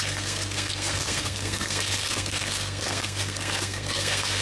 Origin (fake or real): fake